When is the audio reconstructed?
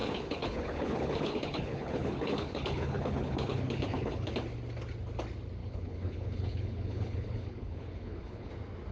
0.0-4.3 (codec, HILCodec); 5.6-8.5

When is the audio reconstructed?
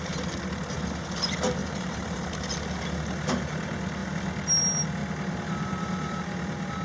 1.6-2.5 (vocoder, BigVGAN v2); 5.0-6.2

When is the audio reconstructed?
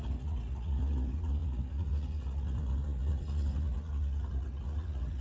0.0-5.2 (vocoder, Vocos)